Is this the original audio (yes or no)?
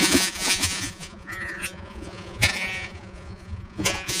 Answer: no